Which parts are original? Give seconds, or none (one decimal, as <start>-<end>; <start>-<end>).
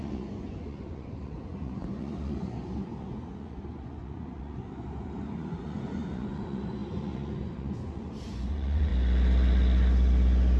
8.9-10.6